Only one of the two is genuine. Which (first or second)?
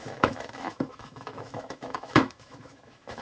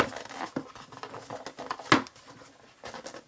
second